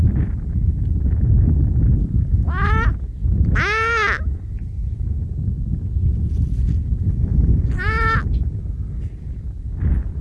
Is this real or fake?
real